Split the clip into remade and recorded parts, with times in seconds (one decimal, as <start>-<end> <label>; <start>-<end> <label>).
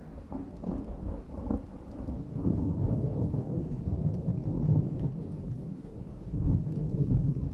0.0-1.3 remade; 1.3-2.1 recorded; 2.1-7.5 remade